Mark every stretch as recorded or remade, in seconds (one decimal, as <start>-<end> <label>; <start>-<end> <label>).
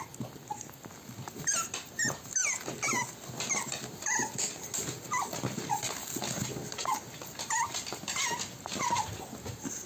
0.0-9.9 recorded